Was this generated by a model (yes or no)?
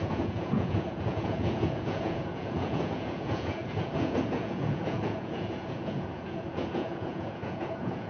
yes